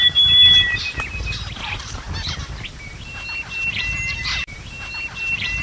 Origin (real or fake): real